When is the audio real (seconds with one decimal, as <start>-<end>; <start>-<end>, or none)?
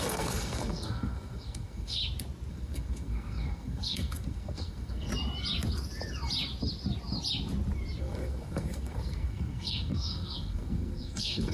2.0-2.5; 5.1-8.0